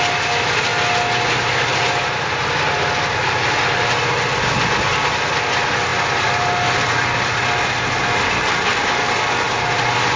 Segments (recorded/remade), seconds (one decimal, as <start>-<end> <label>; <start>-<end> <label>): 0.0-10.2 recorded